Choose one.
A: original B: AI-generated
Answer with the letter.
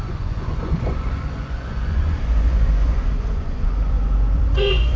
B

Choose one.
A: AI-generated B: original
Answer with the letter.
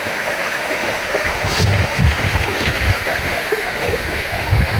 A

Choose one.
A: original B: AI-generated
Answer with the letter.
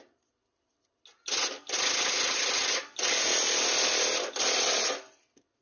A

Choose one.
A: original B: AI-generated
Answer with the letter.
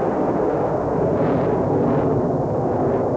A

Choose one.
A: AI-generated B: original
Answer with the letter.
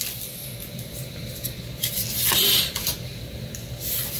A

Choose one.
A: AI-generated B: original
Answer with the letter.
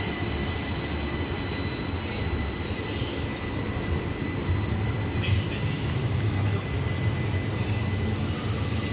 B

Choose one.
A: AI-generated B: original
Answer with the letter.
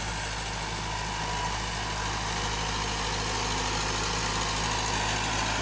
B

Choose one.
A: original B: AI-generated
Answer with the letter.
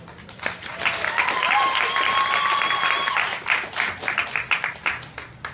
A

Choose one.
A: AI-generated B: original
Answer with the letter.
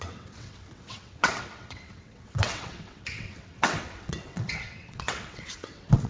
A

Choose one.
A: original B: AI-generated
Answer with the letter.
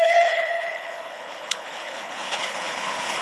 B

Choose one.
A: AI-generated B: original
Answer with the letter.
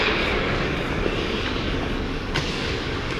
A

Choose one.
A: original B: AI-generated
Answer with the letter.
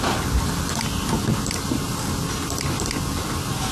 A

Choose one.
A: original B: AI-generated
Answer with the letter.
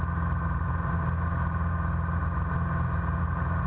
A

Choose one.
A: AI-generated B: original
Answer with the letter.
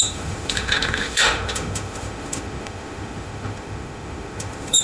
A